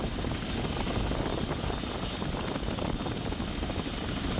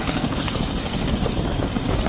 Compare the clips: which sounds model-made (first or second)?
second